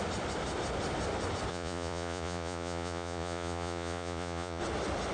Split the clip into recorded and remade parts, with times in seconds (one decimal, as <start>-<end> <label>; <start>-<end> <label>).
0.0-1.5 recorded; 1.5-4.6 remade; 4.6-5.1 recorded